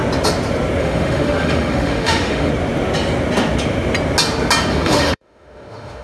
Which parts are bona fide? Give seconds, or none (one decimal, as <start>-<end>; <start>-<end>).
0.0-0.8; 2.5-4.7